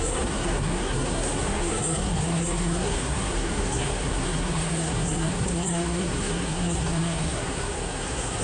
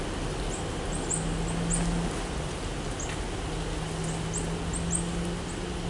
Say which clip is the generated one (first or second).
first